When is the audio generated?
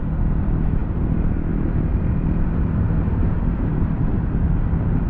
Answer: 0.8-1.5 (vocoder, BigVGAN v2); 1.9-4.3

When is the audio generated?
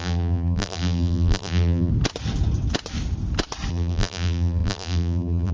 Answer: 0.0-1.9 (vocoder, BigVGAN v2); 3.7-5.5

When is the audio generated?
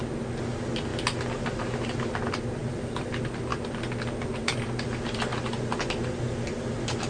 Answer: 2.6-3.1 (vocoder, BigVGAN v2)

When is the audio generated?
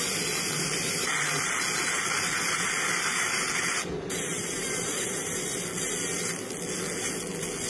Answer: 4.3-5.7 (vocoder, BigVGAN v2)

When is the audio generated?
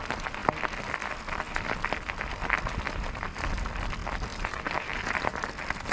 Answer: 4.3-5.5 (vocoder, BigVGAN v2)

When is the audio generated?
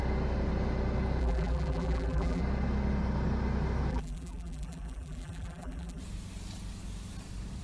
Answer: 1.2-2.4 (vocoder, BigVGAN v2); 3.9-6.0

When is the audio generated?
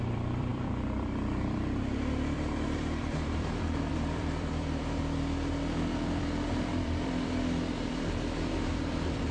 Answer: 0.0-9.3 (vocoder, BigVGAN v2)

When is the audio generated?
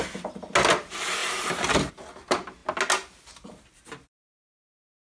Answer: 1.2-1.9 (vocoder, BigVGAN v2)